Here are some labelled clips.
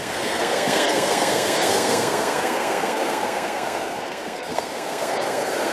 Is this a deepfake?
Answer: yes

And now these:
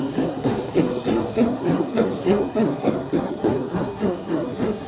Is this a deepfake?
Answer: yes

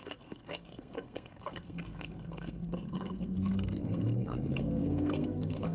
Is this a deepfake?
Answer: yes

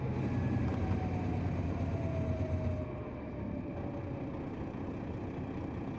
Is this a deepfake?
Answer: no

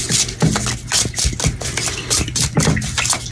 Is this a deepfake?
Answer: no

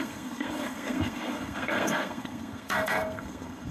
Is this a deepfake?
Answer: yes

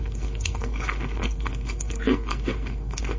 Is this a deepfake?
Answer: yes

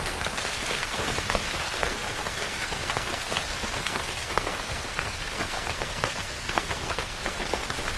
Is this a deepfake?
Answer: yes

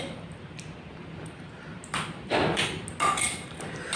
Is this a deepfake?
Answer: no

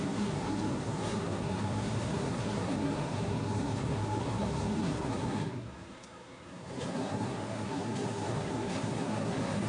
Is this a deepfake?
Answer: yes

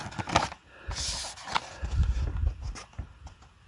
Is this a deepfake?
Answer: no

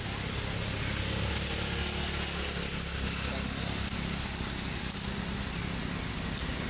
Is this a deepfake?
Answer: no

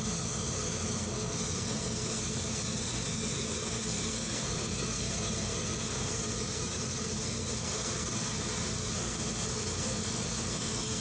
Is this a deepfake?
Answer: yes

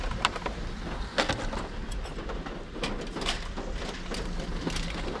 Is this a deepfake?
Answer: no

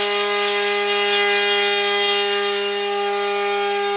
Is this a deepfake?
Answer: no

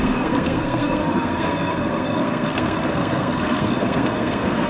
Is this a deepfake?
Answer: yes